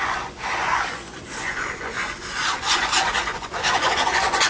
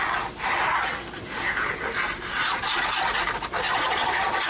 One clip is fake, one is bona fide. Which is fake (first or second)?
first